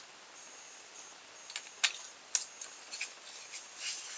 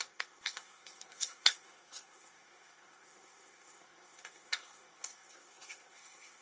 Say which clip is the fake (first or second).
second